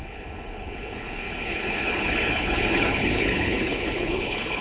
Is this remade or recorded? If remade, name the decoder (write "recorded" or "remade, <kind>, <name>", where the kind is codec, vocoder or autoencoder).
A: remade, codec, HILCodec